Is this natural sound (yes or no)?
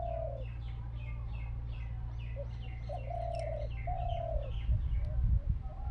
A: yes